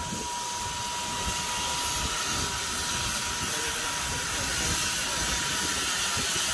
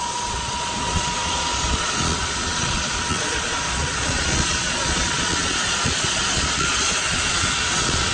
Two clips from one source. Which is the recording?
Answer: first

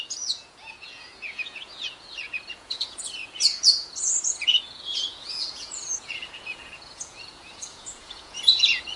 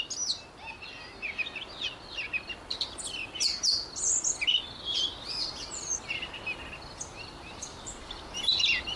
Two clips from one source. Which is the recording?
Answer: second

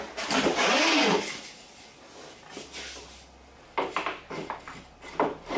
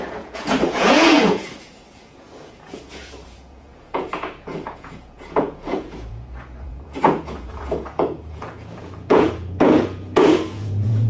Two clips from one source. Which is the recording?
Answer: first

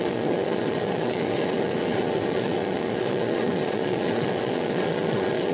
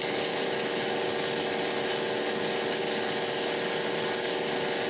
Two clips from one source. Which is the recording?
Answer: second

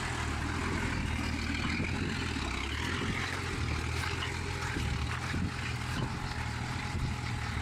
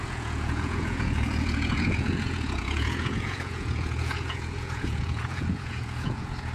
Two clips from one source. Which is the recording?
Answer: first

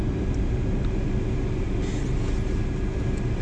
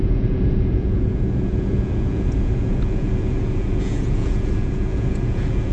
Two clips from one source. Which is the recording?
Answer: first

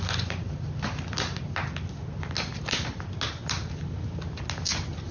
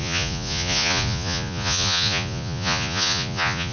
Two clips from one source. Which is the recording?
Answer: first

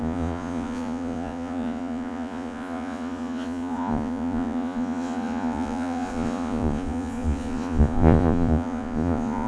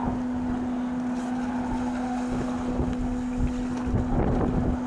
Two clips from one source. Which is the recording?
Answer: second